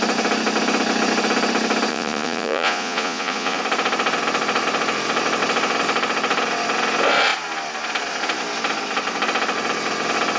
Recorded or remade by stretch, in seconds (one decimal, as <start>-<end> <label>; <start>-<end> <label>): 0.0-1.9 recorded; 1.9-3.6 remade; 3.6-10.4 recorded